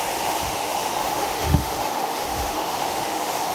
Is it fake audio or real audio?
fake